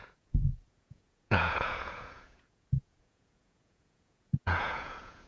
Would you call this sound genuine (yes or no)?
no